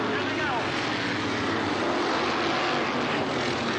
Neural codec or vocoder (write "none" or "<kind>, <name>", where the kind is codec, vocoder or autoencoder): none